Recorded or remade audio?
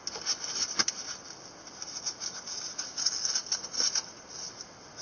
recorded